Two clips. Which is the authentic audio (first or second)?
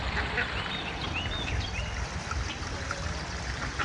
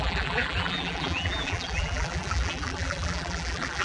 first